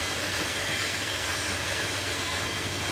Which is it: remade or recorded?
remade